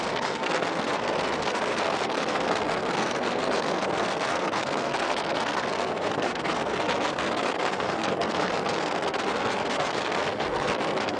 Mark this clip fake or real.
fake